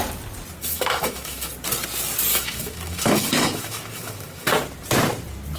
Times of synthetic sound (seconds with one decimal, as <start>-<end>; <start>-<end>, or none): 0.6-1.5; 2.3-4.5